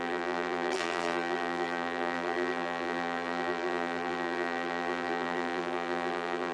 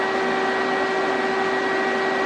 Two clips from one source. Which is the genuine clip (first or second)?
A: second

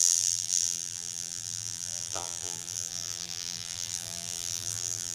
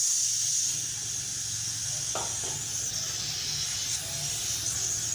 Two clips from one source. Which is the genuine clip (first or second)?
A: second